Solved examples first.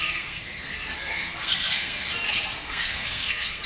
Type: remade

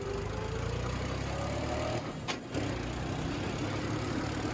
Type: recorded